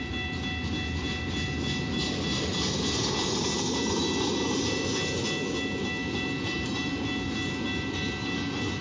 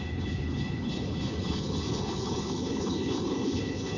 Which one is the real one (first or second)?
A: first